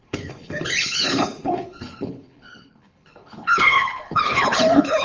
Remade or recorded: remade